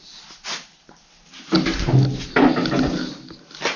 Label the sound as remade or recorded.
recorded